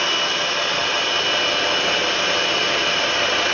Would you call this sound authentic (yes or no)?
yes